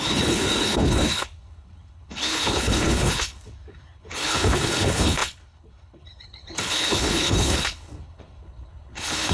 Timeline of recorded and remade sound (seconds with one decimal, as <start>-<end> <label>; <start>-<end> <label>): 0.0-9.3 remade